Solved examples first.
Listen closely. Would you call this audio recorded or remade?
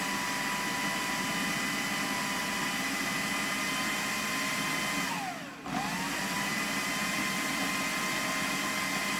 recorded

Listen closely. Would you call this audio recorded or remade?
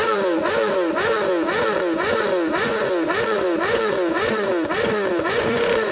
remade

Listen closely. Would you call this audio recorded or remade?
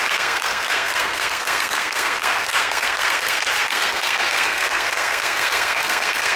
remade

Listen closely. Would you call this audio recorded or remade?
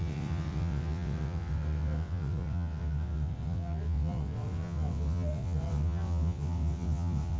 remade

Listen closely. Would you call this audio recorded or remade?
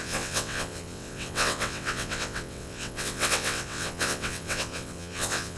remade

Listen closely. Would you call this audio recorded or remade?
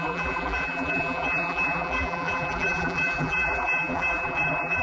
remade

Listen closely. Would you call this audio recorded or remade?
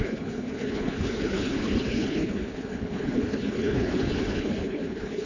remade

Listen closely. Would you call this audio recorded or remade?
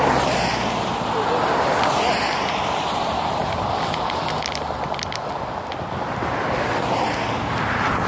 recorded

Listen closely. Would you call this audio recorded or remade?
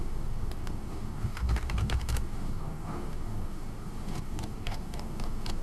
remade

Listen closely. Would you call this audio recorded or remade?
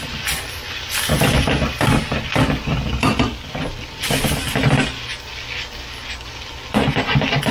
recorded